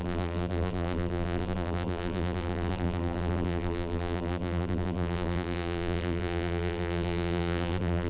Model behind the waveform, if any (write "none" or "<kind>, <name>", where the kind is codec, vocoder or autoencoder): vocoder, BigVGAN v2